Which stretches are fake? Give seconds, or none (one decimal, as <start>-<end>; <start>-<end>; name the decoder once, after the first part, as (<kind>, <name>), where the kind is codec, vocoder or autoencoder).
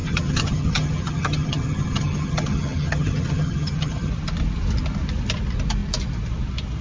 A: 0.0-4.1 (vocoder, HiFi-GAN)